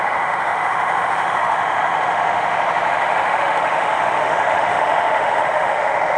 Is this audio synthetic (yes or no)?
yes